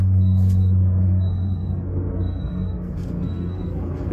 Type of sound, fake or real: fake